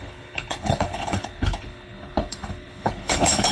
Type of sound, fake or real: fake